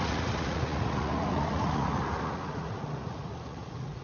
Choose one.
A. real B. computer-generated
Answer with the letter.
B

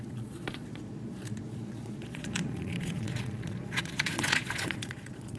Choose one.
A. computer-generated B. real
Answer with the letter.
A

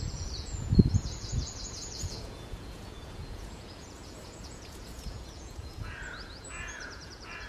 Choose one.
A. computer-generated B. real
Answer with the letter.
A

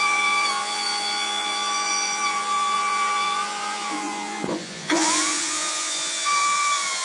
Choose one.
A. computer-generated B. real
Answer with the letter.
A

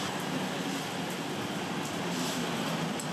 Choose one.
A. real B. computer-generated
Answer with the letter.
A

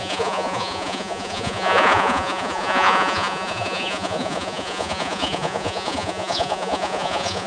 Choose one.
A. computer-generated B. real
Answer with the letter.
A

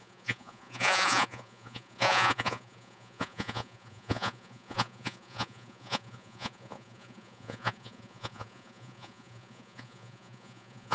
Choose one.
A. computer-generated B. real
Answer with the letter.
A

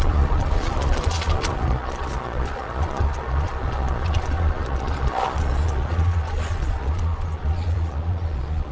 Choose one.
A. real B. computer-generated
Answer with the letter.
B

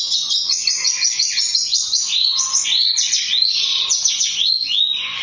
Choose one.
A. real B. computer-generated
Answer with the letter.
B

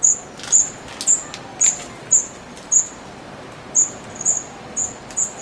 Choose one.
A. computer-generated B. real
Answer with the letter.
B